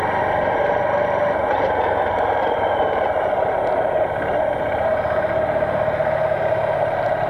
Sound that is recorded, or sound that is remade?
recorded